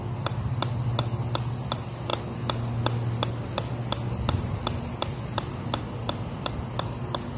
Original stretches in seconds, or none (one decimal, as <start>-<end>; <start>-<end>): 0.0-7.4